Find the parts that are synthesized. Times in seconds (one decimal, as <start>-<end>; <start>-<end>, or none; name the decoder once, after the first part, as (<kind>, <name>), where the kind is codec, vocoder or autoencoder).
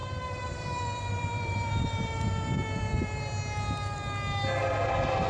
0.0-3.2 (vocoder, BigVGAN v2)